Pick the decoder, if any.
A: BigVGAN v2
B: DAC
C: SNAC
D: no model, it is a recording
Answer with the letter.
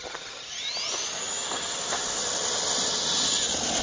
D